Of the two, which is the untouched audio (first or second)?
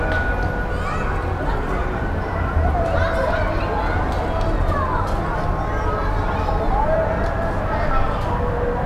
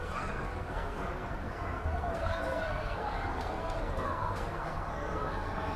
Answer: first